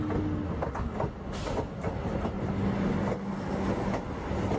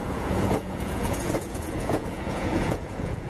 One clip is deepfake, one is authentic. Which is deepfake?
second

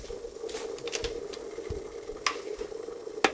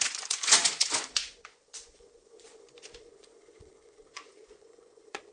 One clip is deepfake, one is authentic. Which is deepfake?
second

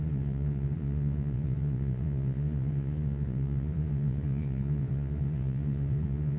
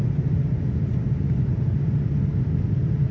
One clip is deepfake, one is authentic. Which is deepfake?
first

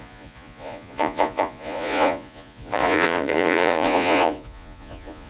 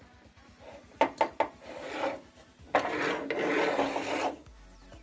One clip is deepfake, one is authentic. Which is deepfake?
first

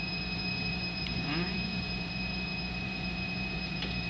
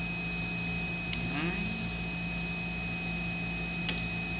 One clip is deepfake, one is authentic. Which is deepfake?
first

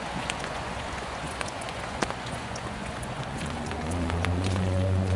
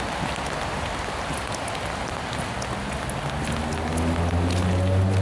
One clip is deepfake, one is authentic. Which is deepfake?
first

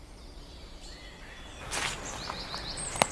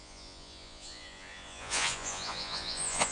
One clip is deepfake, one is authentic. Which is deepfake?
second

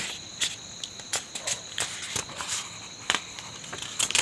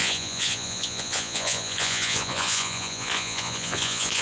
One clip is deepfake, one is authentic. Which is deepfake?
second